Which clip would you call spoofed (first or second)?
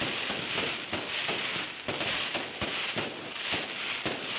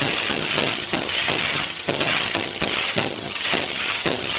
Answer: second